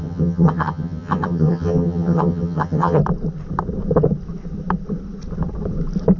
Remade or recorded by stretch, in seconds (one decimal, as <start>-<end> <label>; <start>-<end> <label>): 0.0-3.0 remade; 3.0-6.2 recorded